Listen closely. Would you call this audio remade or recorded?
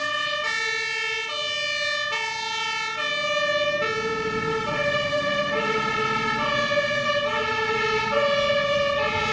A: recorded